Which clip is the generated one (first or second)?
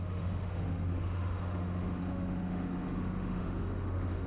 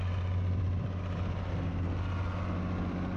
first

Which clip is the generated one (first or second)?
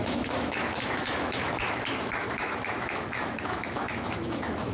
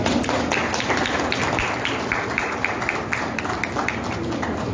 first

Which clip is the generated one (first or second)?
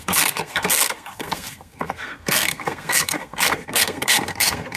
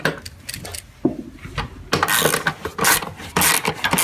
first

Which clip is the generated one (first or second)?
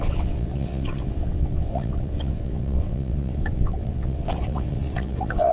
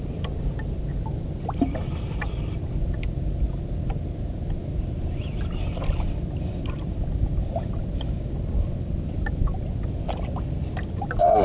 first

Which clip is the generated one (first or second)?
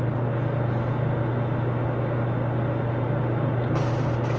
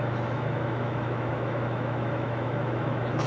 second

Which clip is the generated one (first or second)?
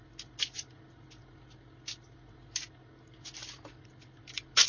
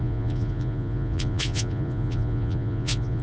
second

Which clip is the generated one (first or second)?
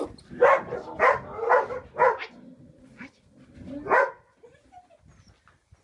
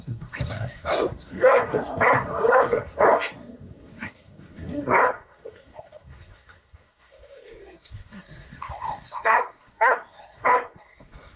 second